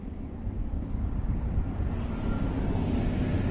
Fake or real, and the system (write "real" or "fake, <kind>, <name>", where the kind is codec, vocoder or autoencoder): real